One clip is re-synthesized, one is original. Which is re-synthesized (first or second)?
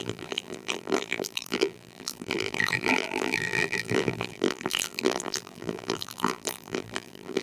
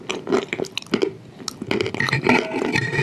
first